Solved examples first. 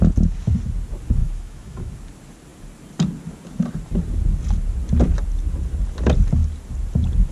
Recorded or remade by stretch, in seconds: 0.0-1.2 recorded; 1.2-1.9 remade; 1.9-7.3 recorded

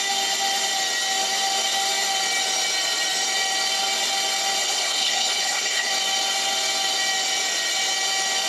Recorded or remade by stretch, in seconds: 0.0-4.6 recorded; 4.6-5.9 remade; 5.9-8.5 recorded

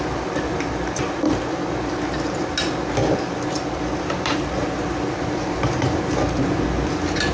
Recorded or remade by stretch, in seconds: 0.0-7.3 recorded

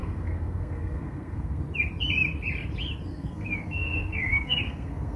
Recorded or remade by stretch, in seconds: 0.0-1.6 remade; 1.6-3.1 recorded; 3.1-5.2 remade

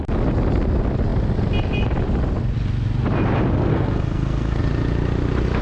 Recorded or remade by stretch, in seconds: 0.0-3.7 recorded; 3.7-4.6 remade; 4.6-5.6 recorded